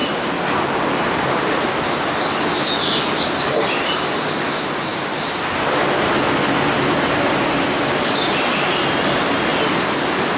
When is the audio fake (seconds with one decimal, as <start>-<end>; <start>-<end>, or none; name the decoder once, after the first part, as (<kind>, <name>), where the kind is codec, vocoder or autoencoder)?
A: none